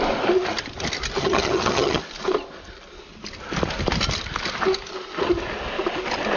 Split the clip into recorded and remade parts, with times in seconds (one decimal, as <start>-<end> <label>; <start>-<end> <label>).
0.0-1.2 recorded; 1.2-2.0 remade; 2.0-6.4 recorded